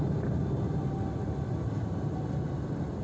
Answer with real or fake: real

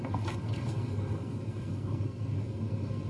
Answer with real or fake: fake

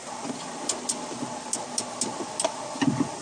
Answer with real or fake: real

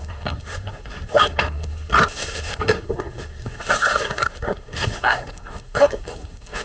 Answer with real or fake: fake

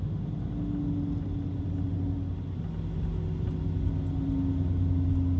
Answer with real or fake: real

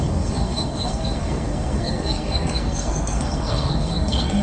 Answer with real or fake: fake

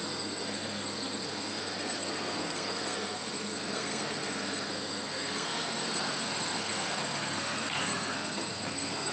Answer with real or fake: fake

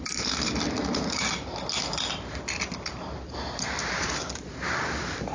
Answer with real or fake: real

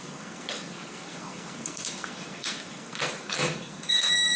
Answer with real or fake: fake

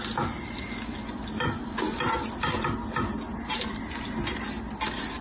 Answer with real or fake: real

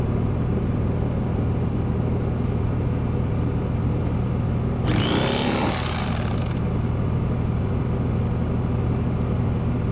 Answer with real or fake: real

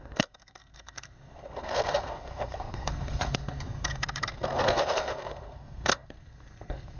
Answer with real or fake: fake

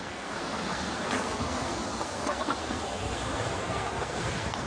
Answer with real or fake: fake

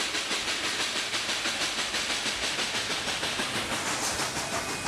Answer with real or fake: real